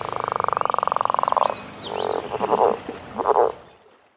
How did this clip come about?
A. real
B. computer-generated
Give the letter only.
A